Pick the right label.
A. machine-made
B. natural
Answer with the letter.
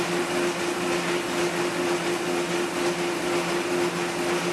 B